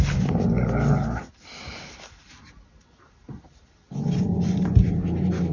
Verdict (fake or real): real